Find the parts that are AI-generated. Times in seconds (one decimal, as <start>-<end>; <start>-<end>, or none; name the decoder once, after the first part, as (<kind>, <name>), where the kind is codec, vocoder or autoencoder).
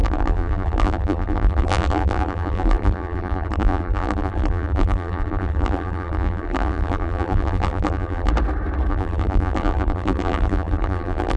0.0-8.3 (vocoder, BigVGAN v2); 8.9-11.4